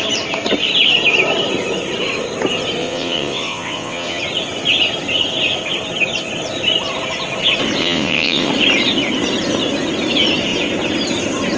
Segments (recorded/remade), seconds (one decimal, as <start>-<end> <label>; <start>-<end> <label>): 0.0-2.8 recorded; 2.8-4.2 remade; 4.2-7.8 recorded; 7.8-8.5 remade; 8.5-11.6 recorded